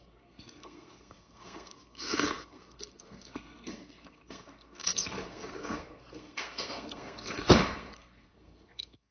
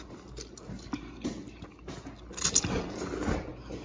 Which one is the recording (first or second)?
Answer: second